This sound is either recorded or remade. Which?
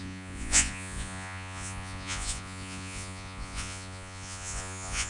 remade